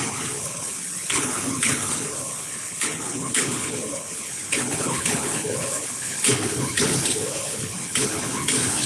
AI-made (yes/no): yes